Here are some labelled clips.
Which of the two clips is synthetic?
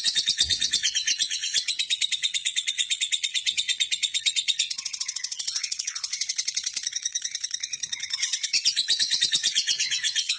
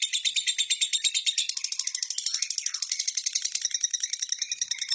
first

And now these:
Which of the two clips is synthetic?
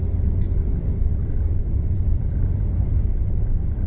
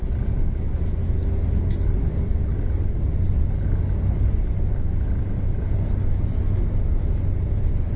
first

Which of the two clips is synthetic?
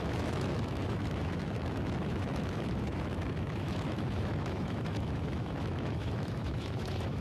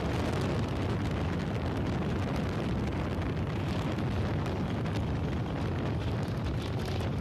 first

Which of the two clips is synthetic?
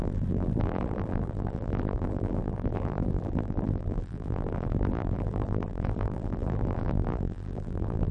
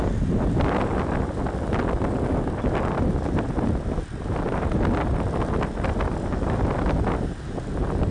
first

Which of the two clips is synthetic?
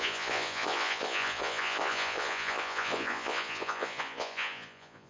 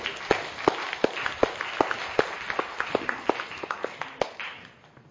first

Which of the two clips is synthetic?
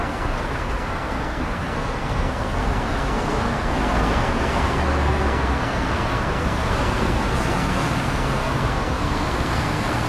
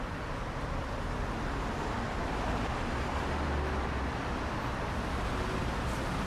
first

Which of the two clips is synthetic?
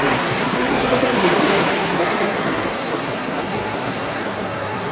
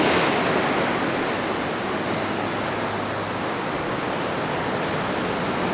first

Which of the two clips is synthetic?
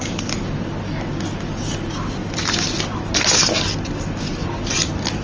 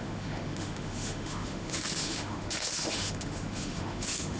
second